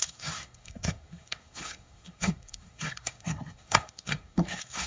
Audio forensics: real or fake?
fake